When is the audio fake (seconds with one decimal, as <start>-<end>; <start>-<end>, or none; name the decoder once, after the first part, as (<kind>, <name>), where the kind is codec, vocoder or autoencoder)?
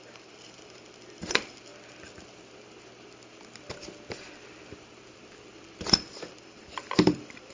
0.0-1.7 (vocoder, BigVGAN v2); 5.9-7.5